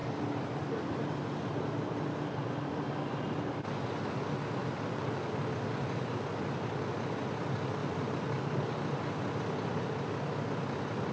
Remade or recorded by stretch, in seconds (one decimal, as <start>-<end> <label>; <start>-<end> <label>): 0.0-0.8 remade; 0.8-4.6 recorded; 4.6-5.5 remade; 5.5-7.8 recorded; 7.8-8.8 remade; 8.8-11.1 recorded